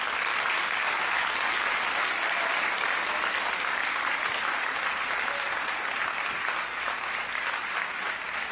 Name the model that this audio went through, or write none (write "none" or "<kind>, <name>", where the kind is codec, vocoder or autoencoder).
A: none